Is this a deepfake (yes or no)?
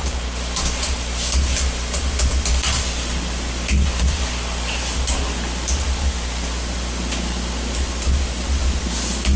no